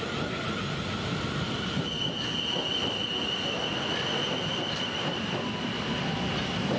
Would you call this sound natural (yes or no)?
yes